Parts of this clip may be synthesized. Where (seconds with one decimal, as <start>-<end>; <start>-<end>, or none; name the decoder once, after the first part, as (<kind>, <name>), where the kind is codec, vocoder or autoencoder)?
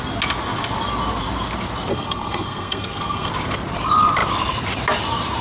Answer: 1.9-3.3 (codec, SNAC)